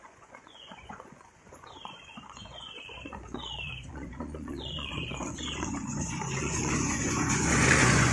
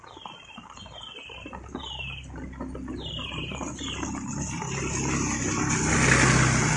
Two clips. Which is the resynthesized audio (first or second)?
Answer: first